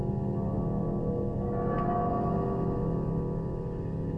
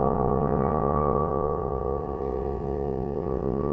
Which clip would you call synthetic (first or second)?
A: second